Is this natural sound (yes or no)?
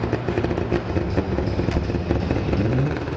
yes